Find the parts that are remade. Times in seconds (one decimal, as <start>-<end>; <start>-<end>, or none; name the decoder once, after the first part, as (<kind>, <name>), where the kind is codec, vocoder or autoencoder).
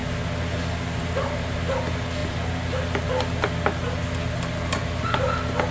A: none